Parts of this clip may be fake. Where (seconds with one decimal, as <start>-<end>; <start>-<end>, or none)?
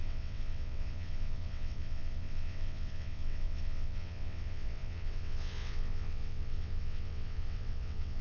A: 0.0-8.2